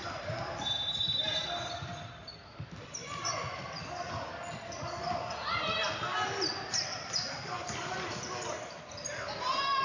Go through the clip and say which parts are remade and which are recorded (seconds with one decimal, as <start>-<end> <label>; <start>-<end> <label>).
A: 0.0-3.0 recorded; 3.0-3.8 remade; 3.8-6.5 recorded; 6.5-8.8 remade; 8.8-9.8 recorded